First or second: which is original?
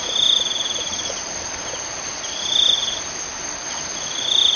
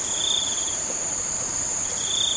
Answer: first